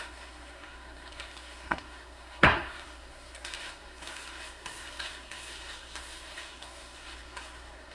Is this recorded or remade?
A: remade